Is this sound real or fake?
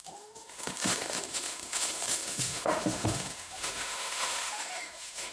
fake